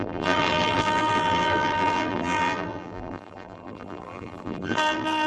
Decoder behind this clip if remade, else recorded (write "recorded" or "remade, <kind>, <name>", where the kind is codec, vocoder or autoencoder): remade, vocoder, BigVGAN v2